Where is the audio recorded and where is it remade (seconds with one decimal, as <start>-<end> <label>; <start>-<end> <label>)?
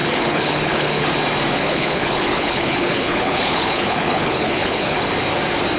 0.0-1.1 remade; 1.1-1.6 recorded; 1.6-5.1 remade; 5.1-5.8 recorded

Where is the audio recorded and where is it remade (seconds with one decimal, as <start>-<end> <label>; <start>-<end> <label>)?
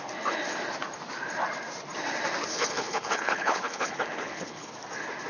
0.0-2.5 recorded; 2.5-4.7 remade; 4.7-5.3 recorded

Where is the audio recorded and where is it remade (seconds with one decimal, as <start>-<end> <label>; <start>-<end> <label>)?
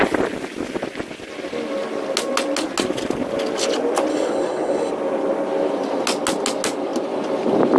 0.0-4.1 recorded; 4.1-4.9 remade; 4.9-7.8 recorded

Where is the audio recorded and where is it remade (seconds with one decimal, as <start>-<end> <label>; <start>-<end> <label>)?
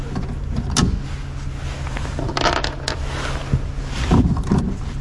0.0-5.0 recorded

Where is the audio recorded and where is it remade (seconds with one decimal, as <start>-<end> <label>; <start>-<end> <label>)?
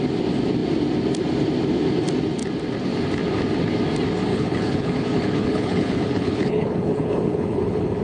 0.0-4.3 recorded; 4.3-8.0 remade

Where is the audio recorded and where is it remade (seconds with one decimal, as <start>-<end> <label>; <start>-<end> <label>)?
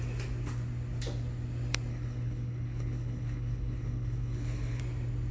0.0-1.9 recorded; 1.9-4.8 remade; 4.8-5.3 recorded